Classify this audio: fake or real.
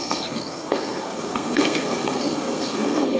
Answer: fake